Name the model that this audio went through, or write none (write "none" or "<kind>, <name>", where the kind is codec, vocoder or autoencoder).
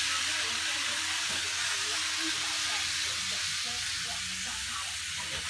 none